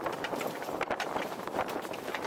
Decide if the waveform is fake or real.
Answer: fake